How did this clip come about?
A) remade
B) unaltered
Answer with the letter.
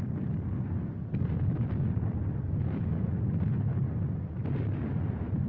B